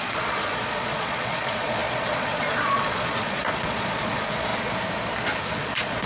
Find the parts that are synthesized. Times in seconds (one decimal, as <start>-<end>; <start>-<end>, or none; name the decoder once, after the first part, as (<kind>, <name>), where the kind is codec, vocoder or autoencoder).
0.0-4.5 (vocoder, Vocos); 5.4-6.1